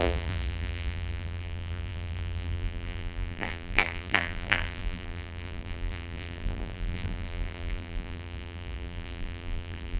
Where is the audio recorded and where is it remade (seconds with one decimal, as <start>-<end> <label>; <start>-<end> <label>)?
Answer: 0.0-10.0 remade